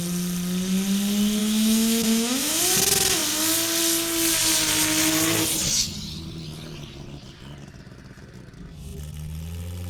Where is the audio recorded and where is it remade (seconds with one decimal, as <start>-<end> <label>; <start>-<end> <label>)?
0.0-1.4 recorded; 1.4-2.6 remade; 2.6-9.9 recorded